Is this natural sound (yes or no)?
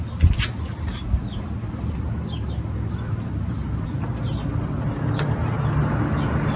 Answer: yes